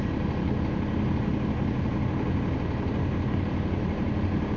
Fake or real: real